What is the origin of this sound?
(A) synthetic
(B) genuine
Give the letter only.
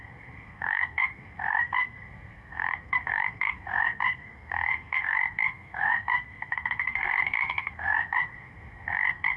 A